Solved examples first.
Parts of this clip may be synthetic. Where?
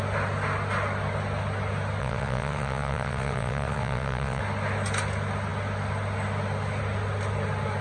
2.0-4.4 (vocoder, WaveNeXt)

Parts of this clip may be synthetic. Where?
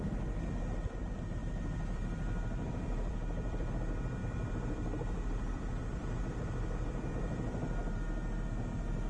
1.4-3.7 (vocoder, BigVGAN v2); 4.2-7.1